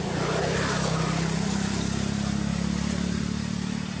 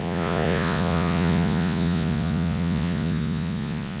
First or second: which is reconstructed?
second